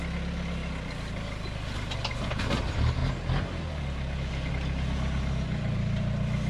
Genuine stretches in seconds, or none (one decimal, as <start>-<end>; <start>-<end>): 0.0-6.5